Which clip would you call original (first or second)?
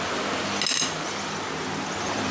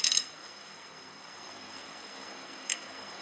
first